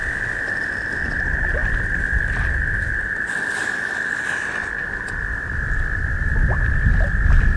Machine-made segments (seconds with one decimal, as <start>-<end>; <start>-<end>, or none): none

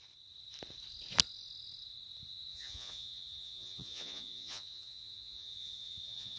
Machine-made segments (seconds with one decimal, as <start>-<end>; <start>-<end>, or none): 2.5-6.4

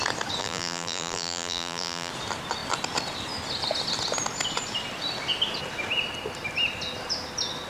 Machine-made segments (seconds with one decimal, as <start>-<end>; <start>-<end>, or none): 0.4-2.1

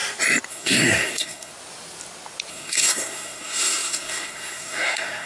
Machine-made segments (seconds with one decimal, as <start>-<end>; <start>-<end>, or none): 0.5-1.5; 2.5-5.3

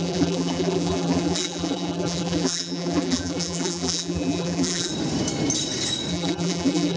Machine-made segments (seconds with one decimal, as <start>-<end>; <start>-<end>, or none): 0.0-4.9; 6.1-7.0

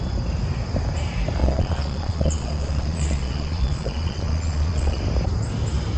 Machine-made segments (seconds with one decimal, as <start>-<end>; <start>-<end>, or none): 1.4-5.0